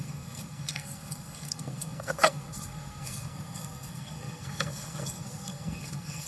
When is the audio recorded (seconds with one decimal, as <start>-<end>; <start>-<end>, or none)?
none